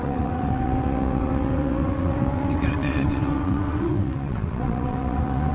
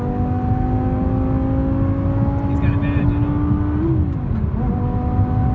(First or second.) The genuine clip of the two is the second